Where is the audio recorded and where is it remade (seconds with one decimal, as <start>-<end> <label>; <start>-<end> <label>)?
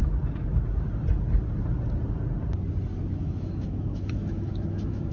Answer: 0.0-3.1 recorded; 3.1-5.1 remade